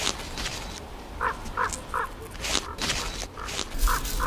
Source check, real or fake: real